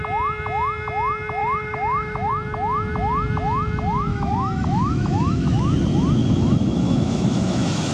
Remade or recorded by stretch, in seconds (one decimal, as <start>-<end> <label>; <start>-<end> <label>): 0.0-1.4 recorded; 1.4-2.3 remade; 2.3-4.1 recorded; 4.1-5.6 remade; 5.6-6.2 recorded; 6.2-7.9 remade